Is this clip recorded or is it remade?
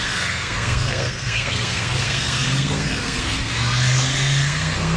remade